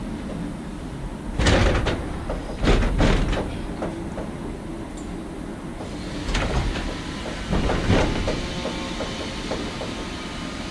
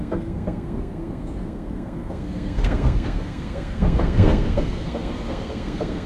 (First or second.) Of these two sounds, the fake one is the second